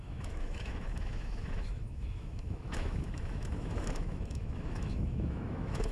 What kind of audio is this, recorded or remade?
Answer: remade